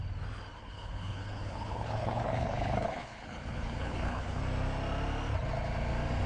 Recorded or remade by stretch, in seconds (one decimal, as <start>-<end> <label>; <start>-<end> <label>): 0.0-0.6 recorded; 0.6-4.4 remade; 4.4-6.3 recorded

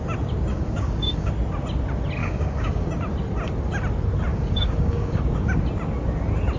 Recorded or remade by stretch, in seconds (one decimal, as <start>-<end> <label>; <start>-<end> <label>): 0.0-0.5 recorded; 0.5-1.3 remade; 1.3-2.2 recorded; 2.2-2.9 remade; 2.9-4.3 recorded; 4.3-5.2 remade; 5.2-6.6 recorded

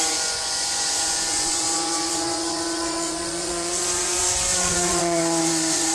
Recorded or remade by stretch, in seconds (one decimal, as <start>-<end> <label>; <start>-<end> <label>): 0.0-5.9 remade

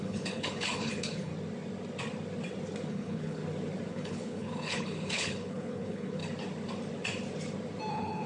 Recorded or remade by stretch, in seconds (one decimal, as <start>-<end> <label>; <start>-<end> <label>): 0.0-1.3 remade; 1.3-2.9 recorded; 2.9-3.4 remade; 3.4-3.9 recorded; 3.9-6.2 remade; 6.2-7.9 recorded; 7.9-8.3 remade

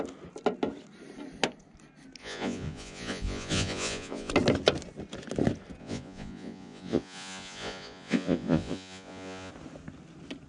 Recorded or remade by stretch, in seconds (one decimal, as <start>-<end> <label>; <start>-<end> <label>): 0.0-2.2 recorded; 2.2-4.3 remade; 4.3-5.8 recorded; 5.8-9.5 remade; 9.5-10.5 recorded

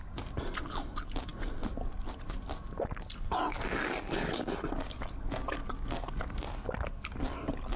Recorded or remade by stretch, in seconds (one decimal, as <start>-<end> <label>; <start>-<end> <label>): 0.0-7.8 recorded

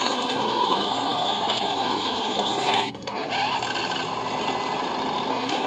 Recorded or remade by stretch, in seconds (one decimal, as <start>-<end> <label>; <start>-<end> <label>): 0.0-3.3 remade; 3.3-5.3 recorded; 5.3-5.7 remade